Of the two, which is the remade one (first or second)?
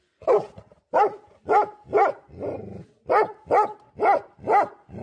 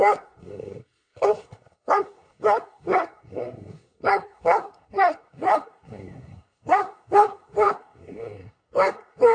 second